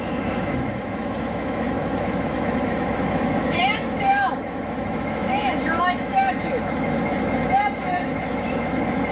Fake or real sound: fake